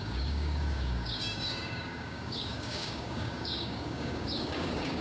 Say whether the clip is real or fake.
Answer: fake